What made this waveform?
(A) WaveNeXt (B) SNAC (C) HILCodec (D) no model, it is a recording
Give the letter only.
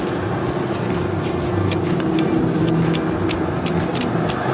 D